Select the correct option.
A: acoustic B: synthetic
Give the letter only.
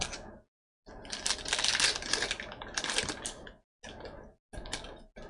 A